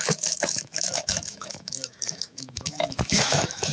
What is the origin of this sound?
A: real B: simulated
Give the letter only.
B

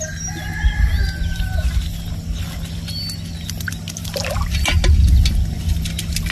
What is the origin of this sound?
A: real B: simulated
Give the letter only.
A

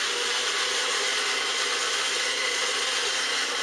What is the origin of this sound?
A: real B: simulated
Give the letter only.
A